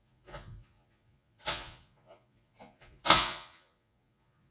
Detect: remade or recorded remade